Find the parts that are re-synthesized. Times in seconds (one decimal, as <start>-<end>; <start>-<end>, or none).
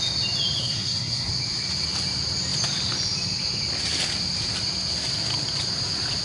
0.6-1.3